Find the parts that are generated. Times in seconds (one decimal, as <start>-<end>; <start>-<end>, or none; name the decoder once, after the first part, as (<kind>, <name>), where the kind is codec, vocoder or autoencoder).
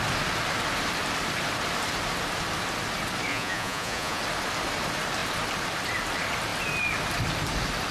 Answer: 3.3-4.2 (vocoder, Vocos)